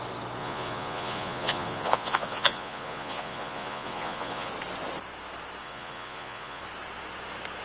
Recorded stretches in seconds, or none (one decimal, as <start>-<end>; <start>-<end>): 0.0-0.4; 4.5-5.6; 6.6-7.6